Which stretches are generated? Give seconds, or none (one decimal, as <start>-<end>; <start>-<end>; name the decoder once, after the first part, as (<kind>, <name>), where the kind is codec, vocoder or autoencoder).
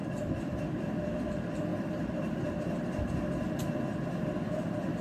0.0-0.6 (vocoder, BigVGAN v2)